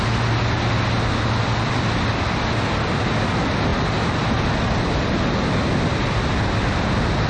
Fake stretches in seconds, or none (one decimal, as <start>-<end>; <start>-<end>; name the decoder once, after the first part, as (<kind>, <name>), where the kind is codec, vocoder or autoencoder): none